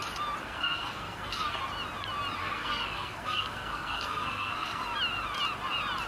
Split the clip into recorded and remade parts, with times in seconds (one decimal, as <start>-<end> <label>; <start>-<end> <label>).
0.0-0.4 recorded; 0.4-1.6 remade; 1.6-2.4 recorded; 2.4-4.8 remade; 4.8-6.1 recorded